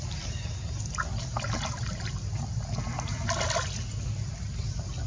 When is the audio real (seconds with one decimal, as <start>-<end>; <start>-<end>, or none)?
0.0-5.1